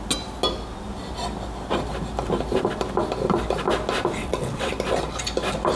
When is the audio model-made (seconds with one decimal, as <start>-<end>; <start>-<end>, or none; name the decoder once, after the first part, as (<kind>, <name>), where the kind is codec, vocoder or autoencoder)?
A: 4.2-4.7 (vocoder, WaveNeXt)